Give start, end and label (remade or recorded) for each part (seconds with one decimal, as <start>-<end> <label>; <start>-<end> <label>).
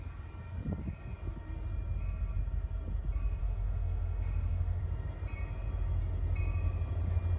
0.0-3.4 recorded; 3.4-4.8 remade; 4.8-7.4 recorded